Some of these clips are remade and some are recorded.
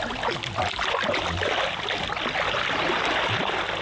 recorded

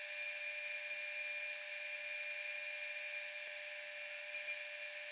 recorded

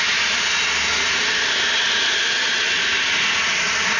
recorded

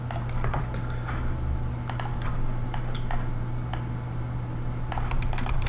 recorded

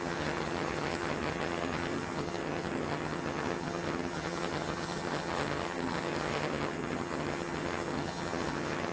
remade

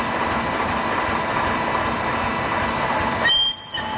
recorded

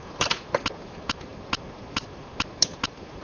recorded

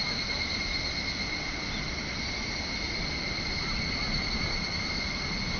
recorded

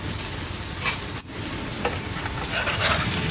recorded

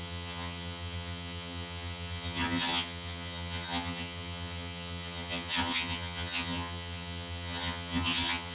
remade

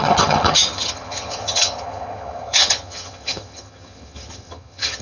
remade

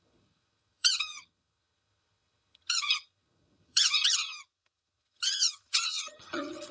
remade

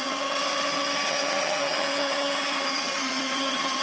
remade